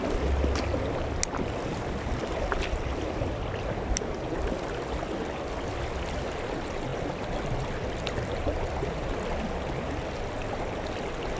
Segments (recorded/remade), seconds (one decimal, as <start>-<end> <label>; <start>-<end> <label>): 0.0-11.4 recorded